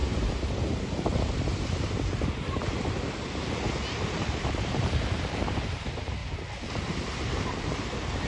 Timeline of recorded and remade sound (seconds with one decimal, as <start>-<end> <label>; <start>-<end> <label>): 0.0-1.1 remade; 1.1-4.4 recorded; 4.4-6.2 remade; 6.2-7.5 recorded; 7.5-8.3 remade